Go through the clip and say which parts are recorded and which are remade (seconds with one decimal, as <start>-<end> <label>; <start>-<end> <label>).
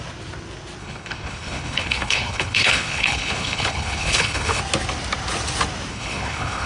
0.0-0.8 recorded; 0.8-4.6 remade; 4.6-5.9 recorded; 5.9-6.7 remade